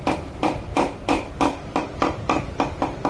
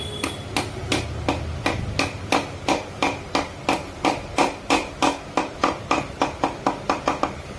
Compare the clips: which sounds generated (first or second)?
first